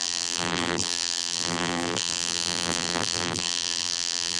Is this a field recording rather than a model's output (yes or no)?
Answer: no